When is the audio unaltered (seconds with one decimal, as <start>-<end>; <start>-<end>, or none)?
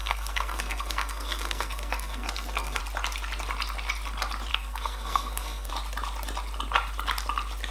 2.8-4.5; 5.7-7.7